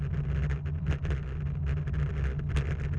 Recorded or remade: recorded